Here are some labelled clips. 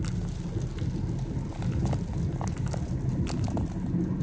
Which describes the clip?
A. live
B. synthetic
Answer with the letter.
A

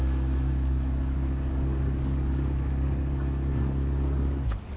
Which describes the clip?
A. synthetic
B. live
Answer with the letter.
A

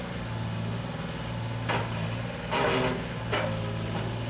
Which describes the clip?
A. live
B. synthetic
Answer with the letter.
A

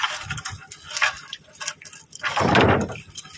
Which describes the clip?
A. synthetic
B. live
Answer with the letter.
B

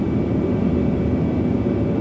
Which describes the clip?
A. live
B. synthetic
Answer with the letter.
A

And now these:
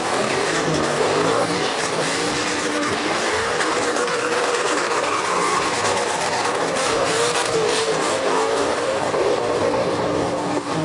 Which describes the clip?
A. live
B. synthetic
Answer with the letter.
B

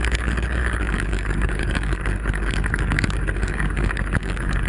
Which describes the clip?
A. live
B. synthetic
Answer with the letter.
B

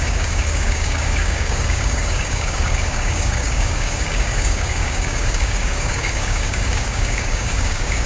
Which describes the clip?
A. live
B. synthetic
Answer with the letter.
B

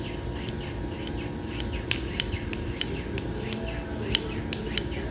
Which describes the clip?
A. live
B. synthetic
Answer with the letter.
A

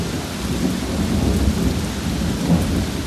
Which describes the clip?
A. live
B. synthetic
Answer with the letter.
A